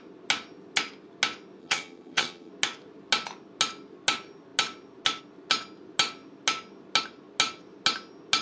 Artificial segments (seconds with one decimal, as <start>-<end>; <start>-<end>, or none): 1.6-2.5

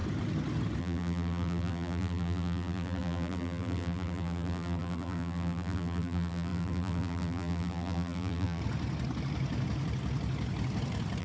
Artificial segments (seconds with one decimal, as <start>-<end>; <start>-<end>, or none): 0.8-8.6

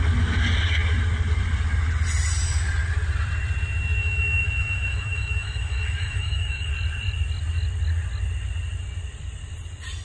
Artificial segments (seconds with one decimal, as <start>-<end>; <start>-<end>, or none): 4.0-6.7

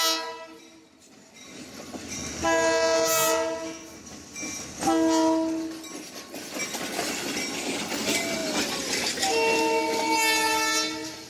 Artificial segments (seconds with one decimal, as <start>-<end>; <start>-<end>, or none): none

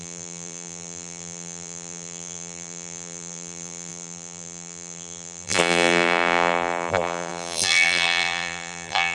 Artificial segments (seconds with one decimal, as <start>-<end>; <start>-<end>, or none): 0.0-9.1